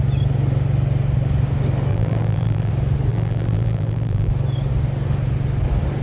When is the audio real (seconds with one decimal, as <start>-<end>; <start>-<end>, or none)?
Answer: 0.0-1.9; 2.7-3.1; 4.3-6.0